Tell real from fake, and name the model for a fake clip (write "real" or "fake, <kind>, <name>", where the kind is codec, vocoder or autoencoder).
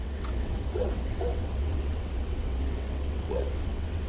fake, vocoder, WaveNeXt